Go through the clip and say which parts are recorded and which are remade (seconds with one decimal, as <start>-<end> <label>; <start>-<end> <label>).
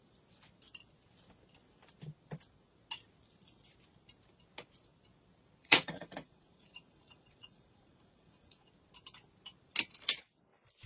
0.0-5.6 recorded; 5.6-8.7 remade; 8.7-10.9 recorded